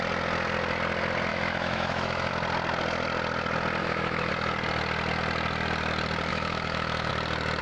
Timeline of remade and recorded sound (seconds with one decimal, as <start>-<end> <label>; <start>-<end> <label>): 0.0-1.3 recorded; 1.3-2.3 remade; 2.3-3.8 recorded; 3.8-4.3 remade; 4.3-6.3 recorded; 6.3-7.1 remade; 7.1-7.6 recorded